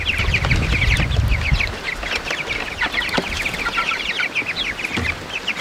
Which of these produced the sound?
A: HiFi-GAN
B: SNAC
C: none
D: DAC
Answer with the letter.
C